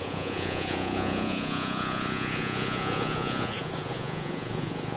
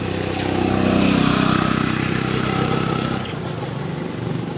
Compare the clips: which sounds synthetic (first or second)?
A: first